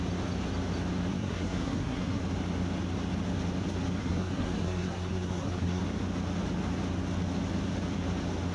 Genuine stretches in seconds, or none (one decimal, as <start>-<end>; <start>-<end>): 0.0-1.1; 2.2-4.0; 5.8-8.5